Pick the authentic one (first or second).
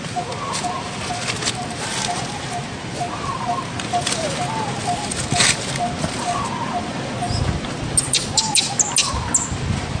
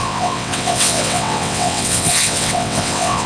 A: first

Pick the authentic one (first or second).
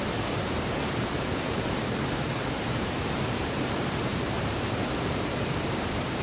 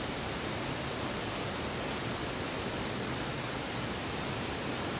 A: second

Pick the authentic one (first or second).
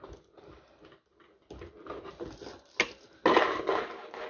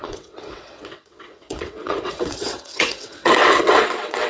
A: first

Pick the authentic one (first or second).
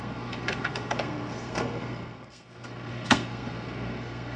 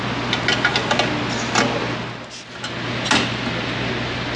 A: second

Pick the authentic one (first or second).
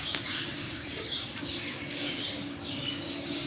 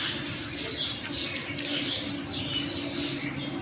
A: second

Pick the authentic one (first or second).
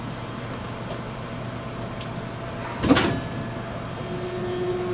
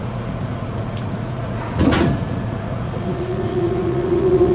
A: first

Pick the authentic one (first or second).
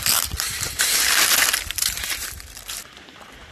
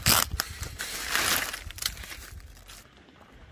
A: second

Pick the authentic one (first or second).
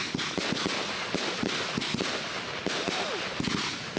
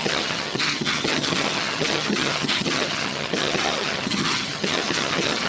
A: first